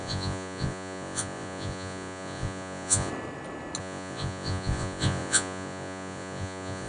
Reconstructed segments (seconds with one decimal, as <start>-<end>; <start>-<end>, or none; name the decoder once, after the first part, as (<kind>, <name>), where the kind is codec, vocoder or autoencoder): 0.0-3.1 (vocoder, Vocos); 3.8-6.9